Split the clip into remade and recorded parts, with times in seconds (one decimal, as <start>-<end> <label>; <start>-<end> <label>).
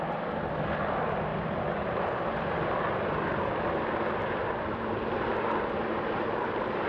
0.0-1.3 recorded; 1.3-2.0 remade; 2.0-4.2 recorded; 4.2-6.9 remade